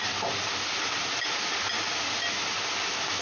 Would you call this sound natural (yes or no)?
yes